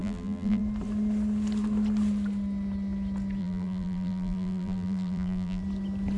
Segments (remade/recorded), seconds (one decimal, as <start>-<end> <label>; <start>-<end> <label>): 0.0-0.6 remade; 0.6-3.4 recorded; 3.4-5.6 remade; 5.6-6.2 recorded